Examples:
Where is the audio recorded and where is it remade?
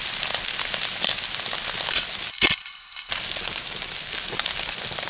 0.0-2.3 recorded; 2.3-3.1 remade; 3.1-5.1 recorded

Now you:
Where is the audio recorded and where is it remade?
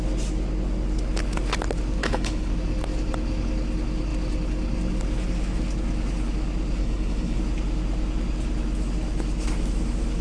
0.0-2.0 recorded; 2.0-2.5 remade; 2.5-6.8 recorded; 6.8-7.4 remade; 7.4-10.2 recorded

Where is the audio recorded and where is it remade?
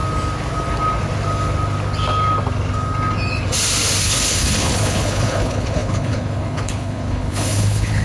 0.0-4.0 recorded; 4.0-8.0 remade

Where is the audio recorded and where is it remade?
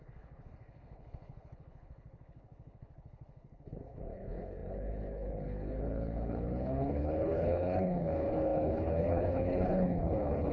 0.0-10.5 remade